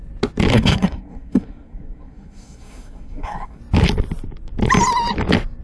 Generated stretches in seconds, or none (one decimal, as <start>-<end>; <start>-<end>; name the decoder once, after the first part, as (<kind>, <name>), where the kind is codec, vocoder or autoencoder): 0.5-3.6 (codec, SNAC)